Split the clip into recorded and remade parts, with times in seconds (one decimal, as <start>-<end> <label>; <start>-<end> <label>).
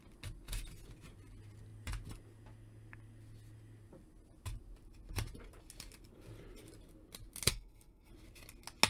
0.0-7.5 recorded; 7.5-8.1 remade; 8.1-8.9 recorded